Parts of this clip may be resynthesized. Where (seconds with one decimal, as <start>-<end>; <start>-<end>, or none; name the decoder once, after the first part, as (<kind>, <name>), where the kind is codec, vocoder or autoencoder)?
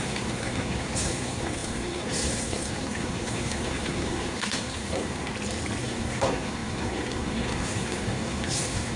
0.0-5.3 (codec, SNAC); 5.8-9.0